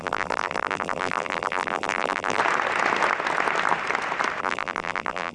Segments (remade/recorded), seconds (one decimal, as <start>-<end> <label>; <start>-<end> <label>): 0.0-2.4 remade; 2.4-4.4 recorded; 4.4-5.3 remade